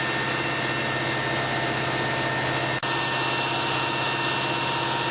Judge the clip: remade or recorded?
recorded